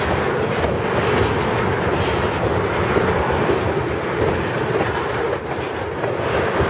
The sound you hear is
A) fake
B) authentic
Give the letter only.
B